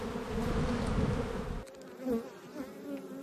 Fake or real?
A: real